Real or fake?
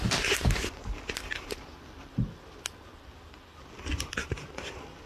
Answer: real